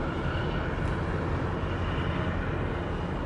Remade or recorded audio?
recorded